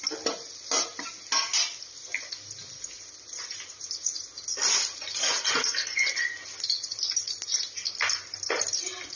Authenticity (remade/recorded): recorded